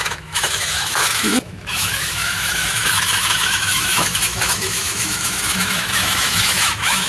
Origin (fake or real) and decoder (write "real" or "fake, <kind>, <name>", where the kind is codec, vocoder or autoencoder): fake, autoencoder, DAC-VAE